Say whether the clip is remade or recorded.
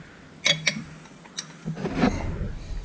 recorded